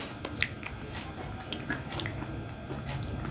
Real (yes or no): yes